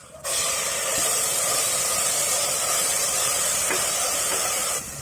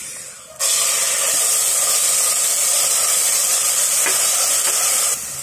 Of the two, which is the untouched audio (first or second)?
second